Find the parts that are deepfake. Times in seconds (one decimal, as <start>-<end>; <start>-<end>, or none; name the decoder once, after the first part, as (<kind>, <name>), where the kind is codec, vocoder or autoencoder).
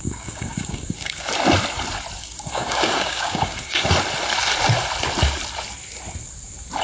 0.0-1.3 (codec, DAC); 2.2-3.9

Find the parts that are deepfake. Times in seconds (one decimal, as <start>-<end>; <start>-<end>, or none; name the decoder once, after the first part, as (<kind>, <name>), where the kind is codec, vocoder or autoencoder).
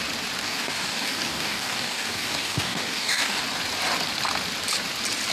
0.4-3.4 (codec, DAC)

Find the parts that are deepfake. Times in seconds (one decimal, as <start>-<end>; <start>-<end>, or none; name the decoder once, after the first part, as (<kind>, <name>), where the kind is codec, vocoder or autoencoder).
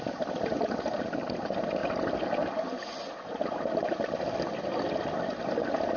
none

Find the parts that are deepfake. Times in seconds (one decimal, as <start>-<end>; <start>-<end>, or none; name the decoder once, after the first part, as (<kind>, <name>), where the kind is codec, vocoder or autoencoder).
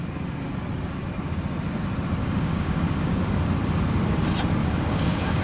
2.2-3.4 (codec, DAC); 4.6-5.4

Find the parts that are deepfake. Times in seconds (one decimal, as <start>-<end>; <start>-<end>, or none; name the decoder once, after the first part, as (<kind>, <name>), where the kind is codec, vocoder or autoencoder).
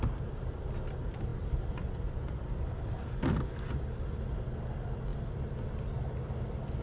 none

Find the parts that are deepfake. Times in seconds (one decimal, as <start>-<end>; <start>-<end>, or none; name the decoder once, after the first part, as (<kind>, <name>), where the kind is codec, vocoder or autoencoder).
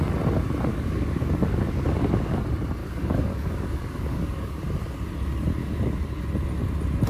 0.7-2.4 (codec, DAC); 2.8-4.6; 5.6-6.2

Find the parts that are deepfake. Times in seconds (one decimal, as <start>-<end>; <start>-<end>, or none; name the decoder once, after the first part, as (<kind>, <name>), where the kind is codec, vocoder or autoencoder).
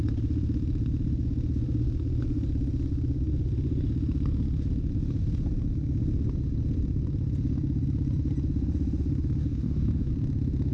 9.4-10.1 (codec, DAC)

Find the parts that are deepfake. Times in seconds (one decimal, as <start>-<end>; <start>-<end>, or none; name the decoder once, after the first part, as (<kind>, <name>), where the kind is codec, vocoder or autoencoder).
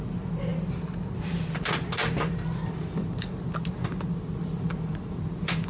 none